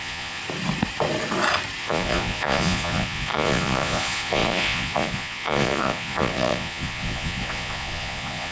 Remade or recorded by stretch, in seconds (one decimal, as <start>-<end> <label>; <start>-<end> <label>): 0.0-0.4 remade; 0.4-1.8 recorded; 1.8-8.5 remade